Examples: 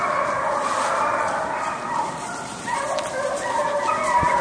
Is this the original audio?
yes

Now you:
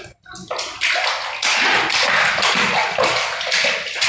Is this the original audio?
yes